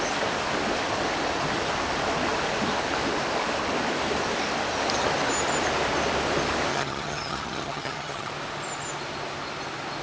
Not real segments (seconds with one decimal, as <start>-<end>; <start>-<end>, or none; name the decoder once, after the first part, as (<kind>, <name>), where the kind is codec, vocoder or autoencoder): 6.7-8.3 (vocoder, HiFi-GAN)